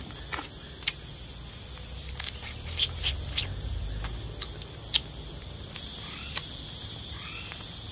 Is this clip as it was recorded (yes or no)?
yes